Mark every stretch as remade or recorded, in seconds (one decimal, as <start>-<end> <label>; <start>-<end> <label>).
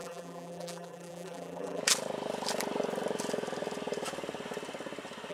0.0-1.8 remade; 1.8-5.3 recorded